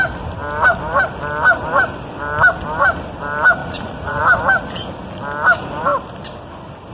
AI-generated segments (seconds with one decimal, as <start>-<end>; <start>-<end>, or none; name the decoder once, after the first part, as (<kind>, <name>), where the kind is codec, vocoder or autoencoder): 3.6-4.2 (vocoder, Vocos)